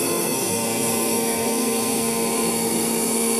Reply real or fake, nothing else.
fake